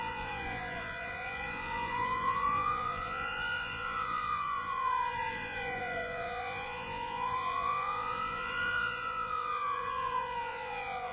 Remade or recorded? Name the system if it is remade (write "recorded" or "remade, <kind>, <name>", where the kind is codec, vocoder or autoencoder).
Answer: remade, vocoder, Vocos